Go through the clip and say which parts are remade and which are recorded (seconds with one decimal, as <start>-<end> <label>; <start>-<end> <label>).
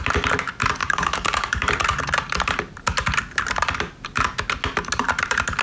0.0-0.8 recorded; 0.8-1.7 remade; 1.7-5.6 recorded